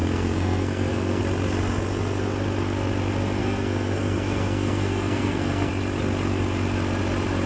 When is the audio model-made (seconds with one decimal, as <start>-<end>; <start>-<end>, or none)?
0.0-1.2; 3.4-5.7